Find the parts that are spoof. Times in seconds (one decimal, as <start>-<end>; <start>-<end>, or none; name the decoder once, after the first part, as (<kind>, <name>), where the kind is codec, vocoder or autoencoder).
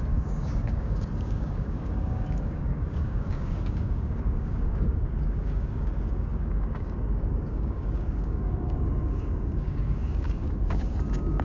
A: 0.0-11.4 (codec, DAC)